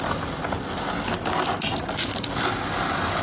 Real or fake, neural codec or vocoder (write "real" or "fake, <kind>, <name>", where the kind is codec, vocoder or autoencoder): real